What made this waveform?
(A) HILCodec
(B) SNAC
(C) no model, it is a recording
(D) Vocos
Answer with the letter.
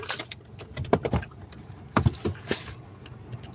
C